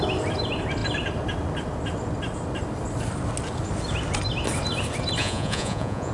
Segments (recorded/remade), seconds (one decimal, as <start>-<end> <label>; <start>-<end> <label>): 0.0-5.2 recorded; 5.2-6.1 remade